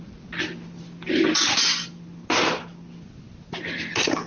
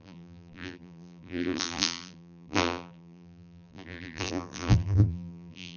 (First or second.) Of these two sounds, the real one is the first